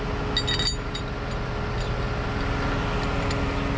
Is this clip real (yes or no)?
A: yes